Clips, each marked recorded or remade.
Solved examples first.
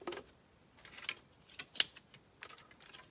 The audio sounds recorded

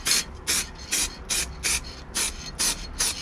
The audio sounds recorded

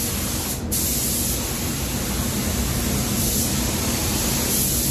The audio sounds recorded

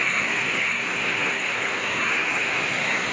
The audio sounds remade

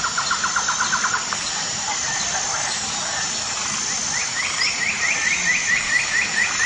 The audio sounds recorded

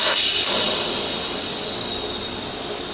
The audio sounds recorded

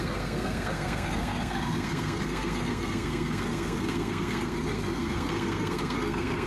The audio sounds remade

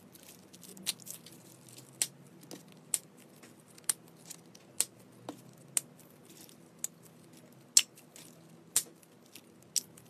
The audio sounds recorded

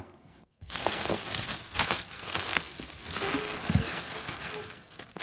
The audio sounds remade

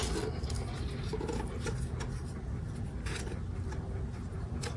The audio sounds recorded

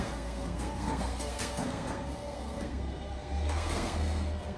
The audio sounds remade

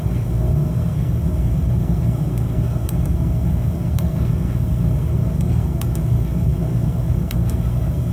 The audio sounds remade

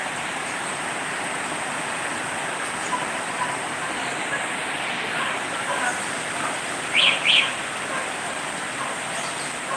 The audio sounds recorded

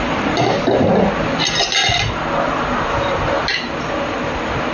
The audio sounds recorded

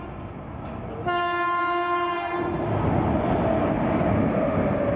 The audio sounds recorded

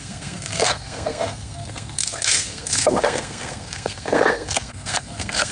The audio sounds remade